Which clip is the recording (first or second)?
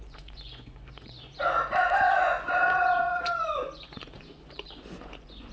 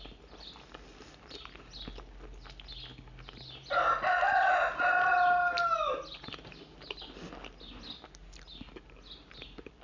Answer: second